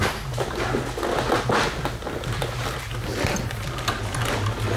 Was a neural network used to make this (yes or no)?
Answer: no